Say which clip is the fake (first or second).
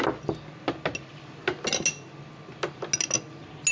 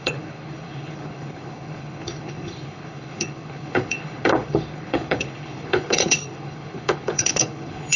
second